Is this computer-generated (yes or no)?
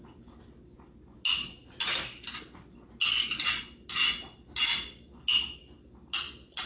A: no